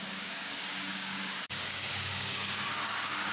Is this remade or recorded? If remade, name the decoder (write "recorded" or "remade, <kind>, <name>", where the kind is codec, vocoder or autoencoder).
remade, codec, DAC